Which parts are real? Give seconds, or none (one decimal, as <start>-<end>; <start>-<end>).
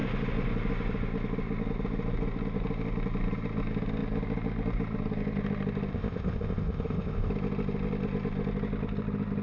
0.0-5.9; 7.3-9.4